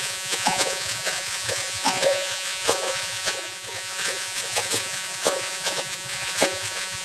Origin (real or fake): fake